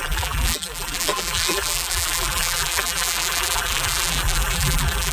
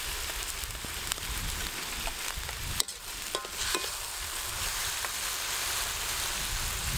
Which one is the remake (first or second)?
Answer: first